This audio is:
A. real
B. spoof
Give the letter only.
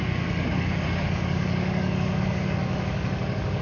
B